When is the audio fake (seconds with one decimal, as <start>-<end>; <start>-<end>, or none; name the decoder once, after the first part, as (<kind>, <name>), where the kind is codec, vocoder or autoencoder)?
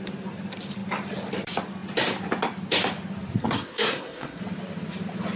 3.4-4.4 (codec, SNAC)